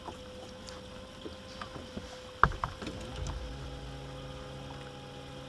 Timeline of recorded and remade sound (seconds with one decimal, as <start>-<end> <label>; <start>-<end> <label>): 0.0-5.5 recorded

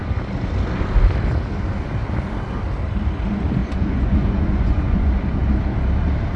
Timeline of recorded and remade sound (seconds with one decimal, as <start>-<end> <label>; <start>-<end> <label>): 0.0-3.6 recorded; 3.6-5.1 remade; 5.1-6.4 recorded

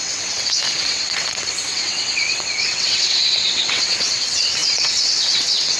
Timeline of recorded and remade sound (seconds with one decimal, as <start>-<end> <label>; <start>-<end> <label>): 0.0-5.8 remade

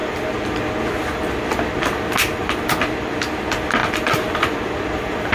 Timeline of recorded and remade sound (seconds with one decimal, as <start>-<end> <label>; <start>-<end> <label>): 0.0-5.3 recorded

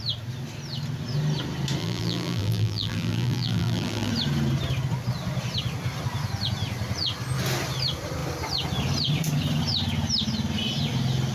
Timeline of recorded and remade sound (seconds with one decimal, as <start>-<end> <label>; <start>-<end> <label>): 0.0-1.8 recorded; 1.8-4.1 remade; 4.1-11.3 recorded